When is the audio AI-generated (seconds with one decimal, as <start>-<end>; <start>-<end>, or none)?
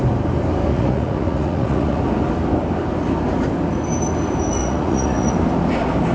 0.7-2.0; 4.6-5.3